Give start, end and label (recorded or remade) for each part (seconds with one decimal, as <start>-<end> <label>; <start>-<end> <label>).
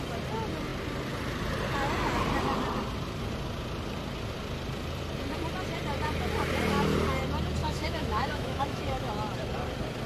0.0-7.6 recorded; 7.6-9.1 remade; 9.1-10.1 recorded